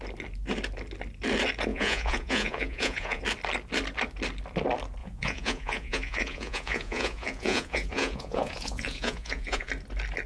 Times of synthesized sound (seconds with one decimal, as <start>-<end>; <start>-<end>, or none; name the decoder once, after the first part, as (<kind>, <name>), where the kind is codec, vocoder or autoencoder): 1.7-3.2 (vocoder, Vocos); 5.0-9.7